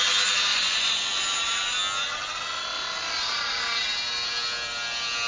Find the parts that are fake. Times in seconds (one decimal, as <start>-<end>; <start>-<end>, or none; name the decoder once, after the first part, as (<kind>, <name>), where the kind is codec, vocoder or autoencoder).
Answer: 0.5-1.1 (vocoder, Vocos)